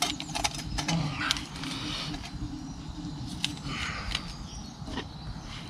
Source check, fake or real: real